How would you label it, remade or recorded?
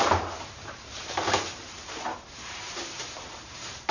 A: remade